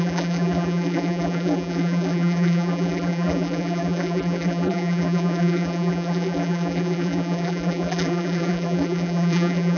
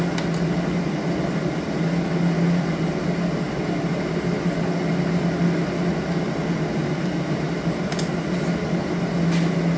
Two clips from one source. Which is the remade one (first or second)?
first